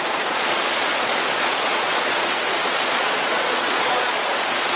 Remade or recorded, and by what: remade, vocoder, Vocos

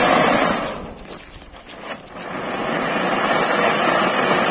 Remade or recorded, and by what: recorded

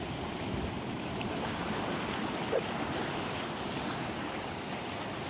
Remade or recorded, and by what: recorded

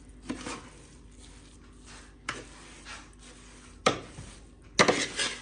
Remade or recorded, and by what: recorded